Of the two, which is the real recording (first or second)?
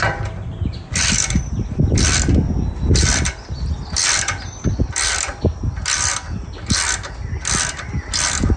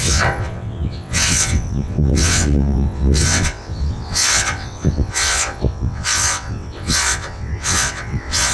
first